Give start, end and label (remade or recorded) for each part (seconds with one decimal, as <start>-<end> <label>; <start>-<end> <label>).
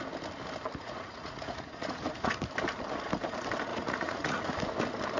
0.0-0.8 recorded; 0.8-2.4 remade; 2.4-3.7 recorded; 3.7-4.4 remade; 4.4-5.2 recorded